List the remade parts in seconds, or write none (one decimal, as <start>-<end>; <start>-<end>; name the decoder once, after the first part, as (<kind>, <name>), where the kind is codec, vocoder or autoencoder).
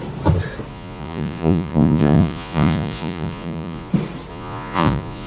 0.7-3.9 (vocoder, Vocos); 4.3-5.3